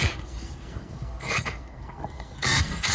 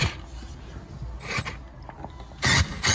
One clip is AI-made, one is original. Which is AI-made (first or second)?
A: first